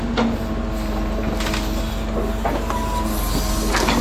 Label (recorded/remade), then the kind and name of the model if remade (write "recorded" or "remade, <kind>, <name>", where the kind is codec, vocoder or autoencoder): recorded